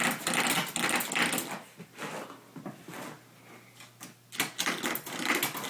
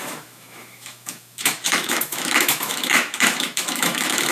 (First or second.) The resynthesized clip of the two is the second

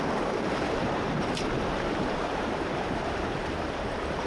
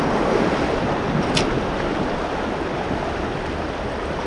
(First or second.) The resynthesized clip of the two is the first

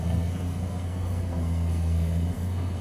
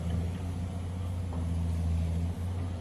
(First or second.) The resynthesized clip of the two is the first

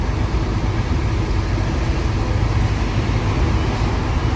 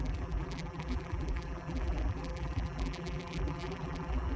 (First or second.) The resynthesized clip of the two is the second